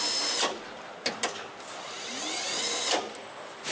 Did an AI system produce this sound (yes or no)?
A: yes